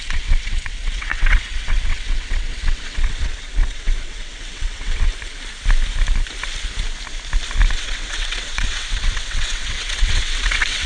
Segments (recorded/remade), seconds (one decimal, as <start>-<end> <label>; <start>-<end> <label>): 0.0-5.1 remade; 5.1-7.7 recorded; 7.7-10.9 remade